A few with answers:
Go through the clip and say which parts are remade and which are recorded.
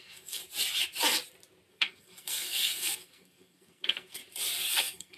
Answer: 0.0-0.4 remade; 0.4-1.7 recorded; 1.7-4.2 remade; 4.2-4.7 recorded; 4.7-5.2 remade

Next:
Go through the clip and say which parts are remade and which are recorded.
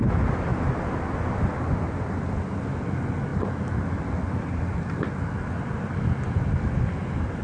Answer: 0.0-7.4 recorded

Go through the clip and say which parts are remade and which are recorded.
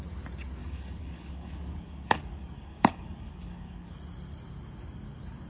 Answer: 0.0-0.6 recorded; 0.6-3.9 remade; 3.9-5.5 recorded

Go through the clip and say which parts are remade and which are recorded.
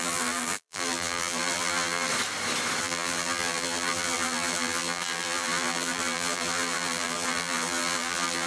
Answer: 0.0-2.1 remade; 2.1-2.8 recorded; 2.8-8.5 remade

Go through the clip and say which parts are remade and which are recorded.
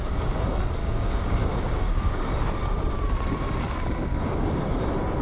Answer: 0.0-0.8 recorded; 0.8-2.3 remade; 2.3-4.1 recorded; 4.1-4.8 remade; 4.8-5.2 recorded